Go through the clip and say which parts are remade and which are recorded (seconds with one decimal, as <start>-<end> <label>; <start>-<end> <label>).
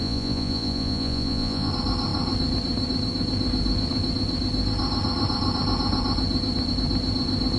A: 0.0-1.7 remade; 1.7-7.6 recorded